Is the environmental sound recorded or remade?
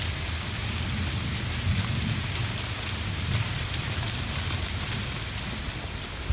recorded